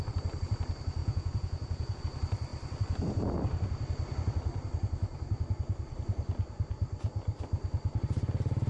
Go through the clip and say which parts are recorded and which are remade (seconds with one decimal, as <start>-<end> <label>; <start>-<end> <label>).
0.0-1.0 recorded; 1.0-2.0 remade; 2.0-8.7 recorded